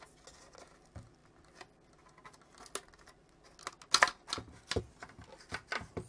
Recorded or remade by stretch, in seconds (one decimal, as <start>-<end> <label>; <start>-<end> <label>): 0.0-6.1 recorded